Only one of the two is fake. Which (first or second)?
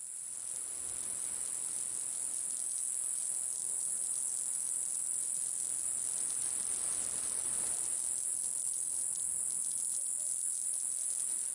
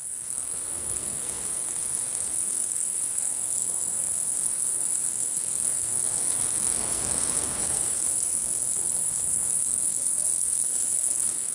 second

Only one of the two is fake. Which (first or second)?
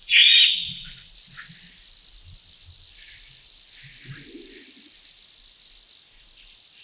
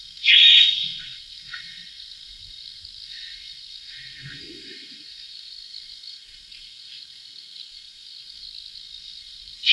second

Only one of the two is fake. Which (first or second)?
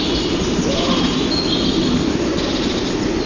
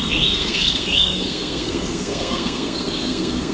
second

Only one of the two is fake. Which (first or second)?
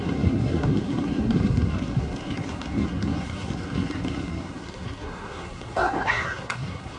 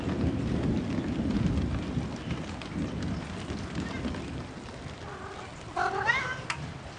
first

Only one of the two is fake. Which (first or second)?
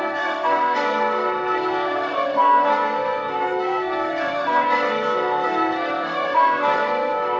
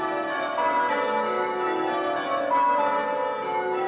first